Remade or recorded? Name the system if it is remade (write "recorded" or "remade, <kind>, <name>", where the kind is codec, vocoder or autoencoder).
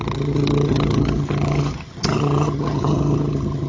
remade, vocoder, HiFi-GAN